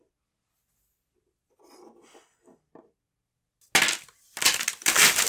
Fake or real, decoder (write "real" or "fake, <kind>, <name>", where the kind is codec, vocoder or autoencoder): real